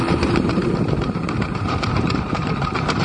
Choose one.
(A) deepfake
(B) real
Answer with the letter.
A